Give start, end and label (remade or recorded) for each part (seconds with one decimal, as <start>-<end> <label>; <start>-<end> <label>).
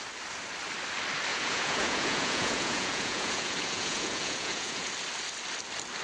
0.0-1.3 recorded; 1.3-4.9 remade; 4.9-6.0 recorded